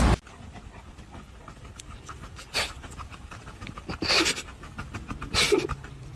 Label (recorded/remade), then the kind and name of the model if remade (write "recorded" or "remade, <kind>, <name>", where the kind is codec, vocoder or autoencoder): recorded